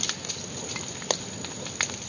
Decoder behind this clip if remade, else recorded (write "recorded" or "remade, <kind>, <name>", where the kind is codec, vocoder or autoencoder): recorded